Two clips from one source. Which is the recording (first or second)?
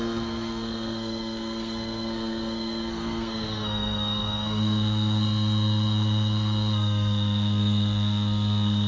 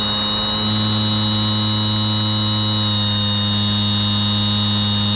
second